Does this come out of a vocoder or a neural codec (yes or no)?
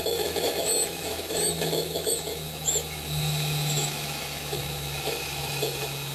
yes